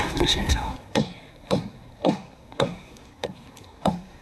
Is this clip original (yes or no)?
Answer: no